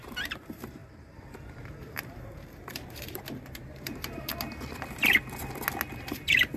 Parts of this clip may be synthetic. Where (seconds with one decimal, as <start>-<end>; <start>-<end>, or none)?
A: 0.0-4.3; 5.9-6.6